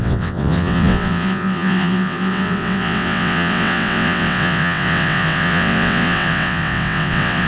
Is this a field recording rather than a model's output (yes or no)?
no